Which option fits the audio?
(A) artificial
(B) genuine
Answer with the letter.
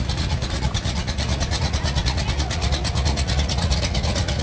A